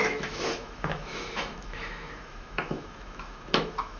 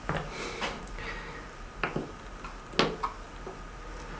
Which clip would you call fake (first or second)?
first